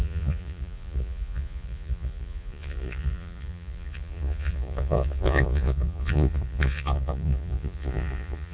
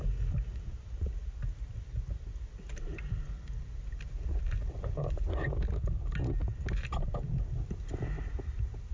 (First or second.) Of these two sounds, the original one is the second